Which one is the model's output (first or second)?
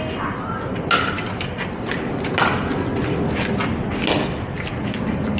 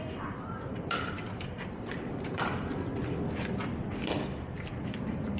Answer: second